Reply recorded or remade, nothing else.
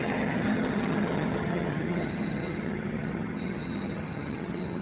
remade